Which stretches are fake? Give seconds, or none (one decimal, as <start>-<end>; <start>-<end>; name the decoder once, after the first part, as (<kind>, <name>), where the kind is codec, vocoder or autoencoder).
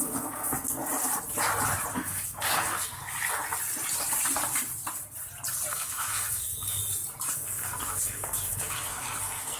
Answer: 0.0-0.8 (codec, SNAC); 1.9-3.0; 5.7-6.8; 7.3-9.6